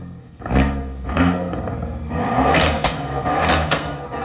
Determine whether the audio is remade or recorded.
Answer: remade